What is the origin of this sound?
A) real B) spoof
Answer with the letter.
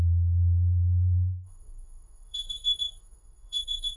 B